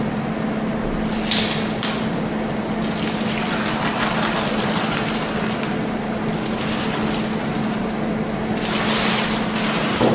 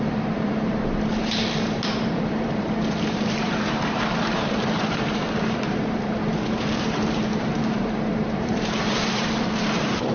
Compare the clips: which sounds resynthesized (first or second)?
second